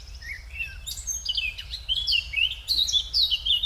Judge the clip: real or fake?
fake